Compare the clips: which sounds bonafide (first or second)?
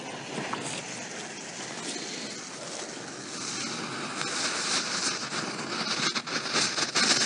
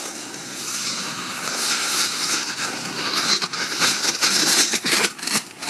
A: first